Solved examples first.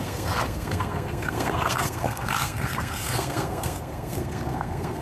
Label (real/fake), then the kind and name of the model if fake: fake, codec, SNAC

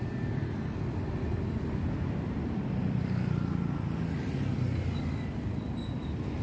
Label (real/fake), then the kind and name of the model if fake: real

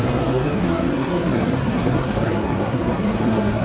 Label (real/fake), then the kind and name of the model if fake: fake, codec, SNAC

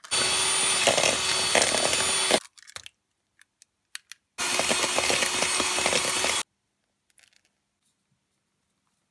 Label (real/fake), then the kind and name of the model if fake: real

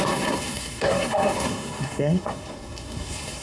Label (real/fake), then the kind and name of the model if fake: fake, codec, SNAC